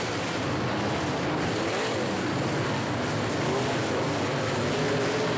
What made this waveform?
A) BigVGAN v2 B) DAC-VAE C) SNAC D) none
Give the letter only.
D